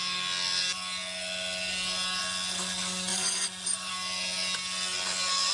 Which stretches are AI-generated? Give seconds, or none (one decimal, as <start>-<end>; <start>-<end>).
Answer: 3.1-3.9